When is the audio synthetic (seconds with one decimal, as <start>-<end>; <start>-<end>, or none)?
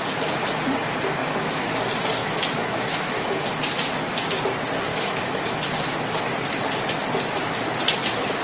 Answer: 1.2-1.8; 2.2-3.4; 4.9-5.6